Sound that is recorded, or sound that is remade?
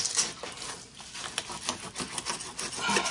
recorded